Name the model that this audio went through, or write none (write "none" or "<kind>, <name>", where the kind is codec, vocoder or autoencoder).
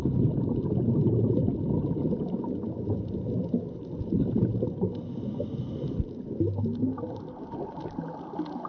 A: none